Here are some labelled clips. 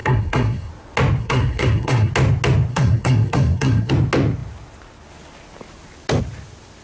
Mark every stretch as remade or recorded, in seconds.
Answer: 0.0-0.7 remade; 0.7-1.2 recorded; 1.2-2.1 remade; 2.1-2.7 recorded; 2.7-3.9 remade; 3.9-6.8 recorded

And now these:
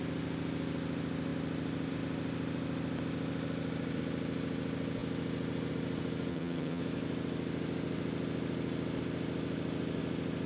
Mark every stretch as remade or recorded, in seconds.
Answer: 0.0-6.3 recorded; 6.3-6.8 remade; 6.8-10.5 recorded

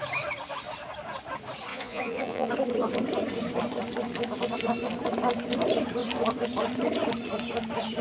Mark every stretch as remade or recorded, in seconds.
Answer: 0.0-1.7 recorded; 1.7-2.5 remade; 2.5-8.0 recorded

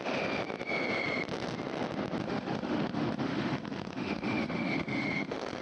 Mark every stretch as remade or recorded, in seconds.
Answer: 0.0-2.2 recorded; 2.2-5.6 remade

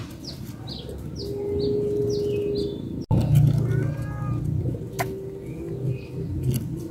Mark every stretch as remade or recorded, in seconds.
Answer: 0.0-6.9 recorded

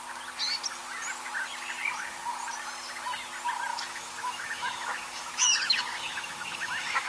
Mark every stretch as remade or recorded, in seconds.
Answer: 0.0-3.7 recorded; 3.7-7.1 remade

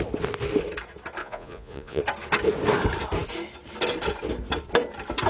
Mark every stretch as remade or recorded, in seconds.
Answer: 0.0-1.2 recorded; 1.2-2.0 remade; 2.0-5.3 recorded